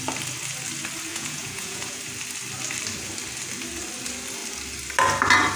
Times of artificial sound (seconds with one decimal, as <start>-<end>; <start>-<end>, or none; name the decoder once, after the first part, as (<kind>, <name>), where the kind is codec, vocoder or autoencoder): 1.1-2.0 (vocoder, Vocos)